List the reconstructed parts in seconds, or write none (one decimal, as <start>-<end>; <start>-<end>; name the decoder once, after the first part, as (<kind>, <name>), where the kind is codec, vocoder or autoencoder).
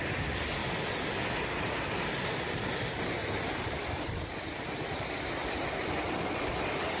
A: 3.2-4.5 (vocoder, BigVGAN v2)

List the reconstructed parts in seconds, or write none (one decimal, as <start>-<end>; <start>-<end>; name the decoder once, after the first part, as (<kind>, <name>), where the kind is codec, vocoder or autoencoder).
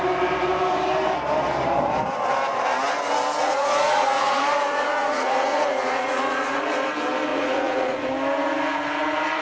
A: 3.4-6.6 (vocoder, Vocos); 7.3-8.1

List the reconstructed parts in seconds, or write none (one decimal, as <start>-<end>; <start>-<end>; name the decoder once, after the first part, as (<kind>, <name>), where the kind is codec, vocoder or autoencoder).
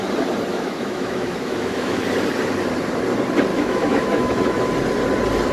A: 0.5-2.0 (autoencoder, DAC-VAE); 3.5-4.7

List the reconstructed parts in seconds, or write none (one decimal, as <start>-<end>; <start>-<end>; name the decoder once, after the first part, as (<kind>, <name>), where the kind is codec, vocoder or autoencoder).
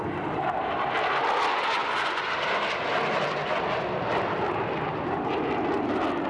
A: 1.5-2.3 (vocoder, Vocos)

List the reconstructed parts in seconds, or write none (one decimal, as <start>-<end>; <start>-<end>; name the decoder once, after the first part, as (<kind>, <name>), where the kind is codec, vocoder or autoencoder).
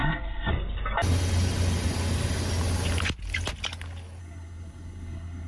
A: 0.0-0.5 (codec, SNAC); 4.2-5.5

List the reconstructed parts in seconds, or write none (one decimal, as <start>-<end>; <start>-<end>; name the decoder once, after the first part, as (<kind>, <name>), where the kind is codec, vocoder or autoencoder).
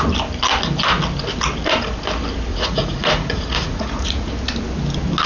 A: 2.5-4.3 (vocoder, Vocos)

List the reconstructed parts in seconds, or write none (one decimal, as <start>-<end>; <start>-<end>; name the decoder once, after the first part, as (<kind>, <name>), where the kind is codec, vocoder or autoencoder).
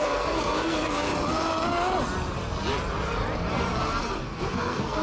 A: 0.0-1.1 (codec, SNAC); 4.1-5.0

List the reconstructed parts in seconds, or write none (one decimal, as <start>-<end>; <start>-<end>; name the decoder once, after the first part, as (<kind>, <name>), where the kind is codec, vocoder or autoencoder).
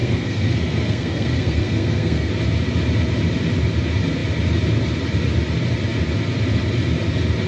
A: 0.0-2.3 (codec, SNAC)